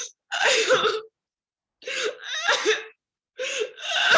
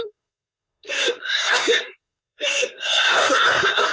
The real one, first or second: first